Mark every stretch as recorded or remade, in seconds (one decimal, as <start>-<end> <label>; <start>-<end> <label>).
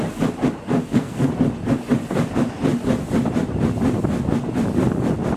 0.0-0.8 recorded; 0.8-1.3 remade; 1.3-5.4 recorded